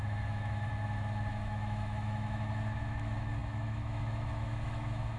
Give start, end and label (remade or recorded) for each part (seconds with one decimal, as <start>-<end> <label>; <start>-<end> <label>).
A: 0.0-0.7 remade; 0.7-1.3 recorded; 1.3-5.2 remade